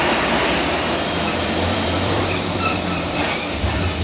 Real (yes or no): no